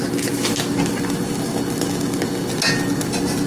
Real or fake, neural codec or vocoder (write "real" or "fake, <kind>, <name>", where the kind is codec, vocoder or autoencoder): real